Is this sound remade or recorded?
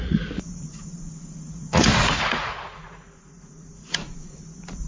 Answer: remade